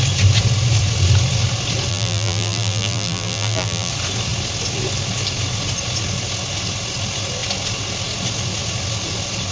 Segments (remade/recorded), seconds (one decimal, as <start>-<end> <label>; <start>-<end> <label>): 0.0-1.9 recorded; 1.9-3.9 remade; 3.9-9.5 recorded